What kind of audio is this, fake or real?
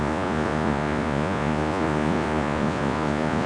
fake